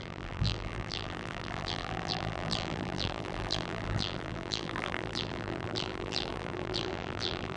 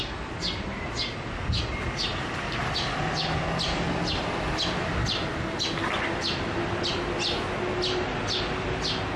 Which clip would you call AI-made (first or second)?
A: first